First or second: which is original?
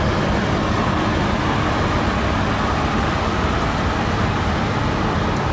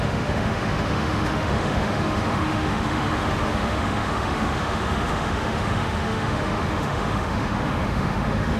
first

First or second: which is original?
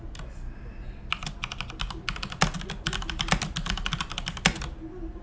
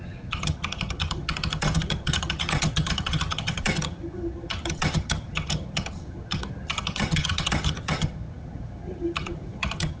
first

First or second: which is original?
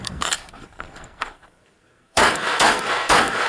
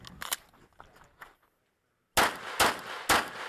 second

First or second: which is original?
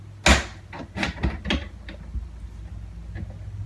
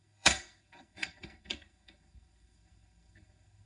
first